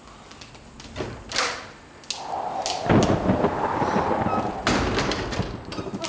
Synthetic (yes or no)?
no